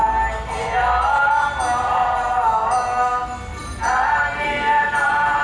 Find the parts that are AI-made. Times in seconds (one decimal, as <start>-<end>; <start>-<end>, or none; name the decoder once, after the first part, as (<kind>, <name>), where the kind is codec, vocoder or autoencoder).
3.5-5.4 (vocoder, BigVGAN v2)